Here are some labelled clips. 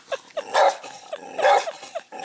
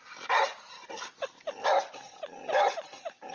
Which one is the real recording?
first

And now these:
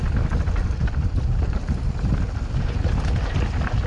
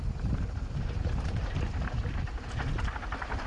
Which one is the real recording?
first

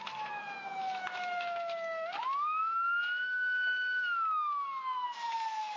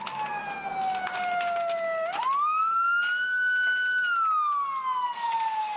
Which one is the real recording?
second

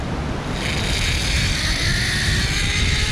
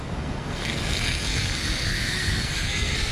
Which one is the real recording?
first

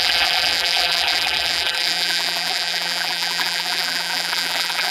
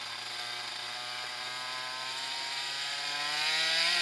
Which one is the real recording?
second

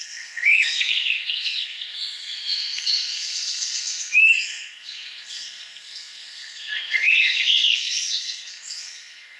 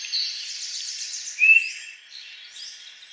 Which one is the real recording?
second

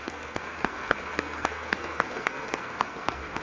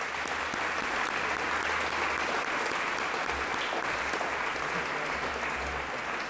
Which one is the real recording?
second